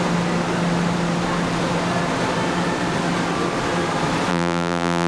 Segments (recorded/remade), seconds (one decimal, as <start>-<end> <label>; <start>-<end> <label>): 0.0-4.3 recorded; 4.3-5.1 remade

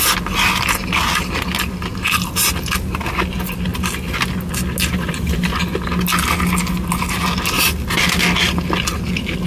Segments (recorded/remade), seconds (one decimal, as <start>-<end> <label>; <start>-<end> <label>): 0.0-9.5 recorded